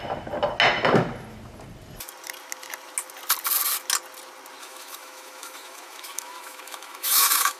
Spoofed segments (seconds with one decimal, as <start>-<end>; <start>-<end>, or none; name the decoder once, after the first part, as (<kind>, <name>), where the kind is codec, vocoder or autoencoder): 4.6-7.6 (autoencoder, DAC-VAE)